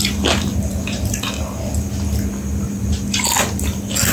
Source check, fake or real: real